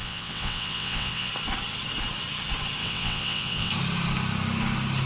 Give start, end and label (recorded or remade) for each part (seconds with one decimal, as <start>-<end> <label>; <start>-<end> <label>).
0.0-1.3 remade; 1.3-2.8 recorded; 2.8-3.7 remade; 3.7-5.1 recorded